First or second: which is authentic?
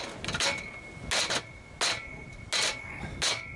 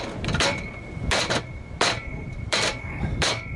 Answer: first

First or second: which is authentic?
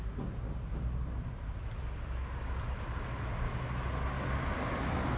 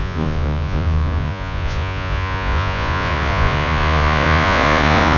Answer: first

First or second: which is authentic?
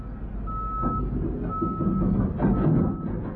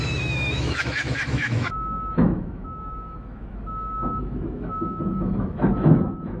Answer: first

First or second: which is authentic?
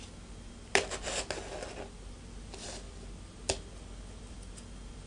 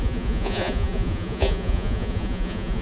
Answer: first